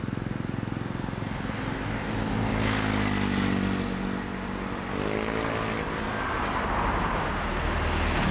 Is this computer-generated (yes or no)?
no